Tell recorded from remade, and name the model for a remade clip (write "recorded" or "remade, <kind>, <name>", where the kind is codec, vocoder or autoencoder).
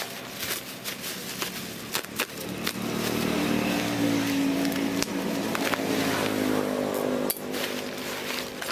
recorded